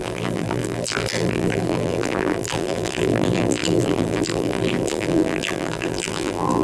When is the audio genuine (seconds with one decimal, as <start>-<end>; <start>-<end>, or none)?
none